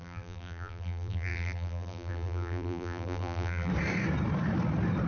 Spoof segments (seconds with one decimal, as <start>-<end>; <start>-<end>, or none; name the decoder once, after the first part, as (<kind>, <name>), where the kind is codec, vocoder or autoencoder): 0.0-3.7 (vocoder, BigVGAN v2)